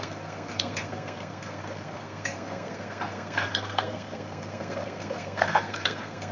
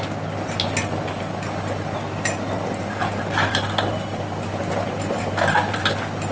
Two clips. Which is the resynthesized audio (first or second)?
first